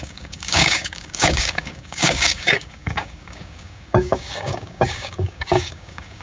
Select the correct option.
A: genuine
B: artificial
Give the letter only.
B